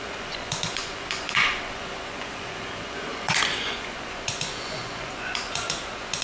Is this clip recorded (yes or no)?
no